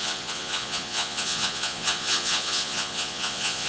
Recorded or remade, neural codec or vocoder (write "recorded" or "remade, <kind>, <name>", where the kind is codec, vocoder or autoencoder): remade, vocoder, Vocos